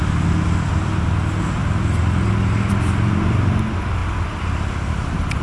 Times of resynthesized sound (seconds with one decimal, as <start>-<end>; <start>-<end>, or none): none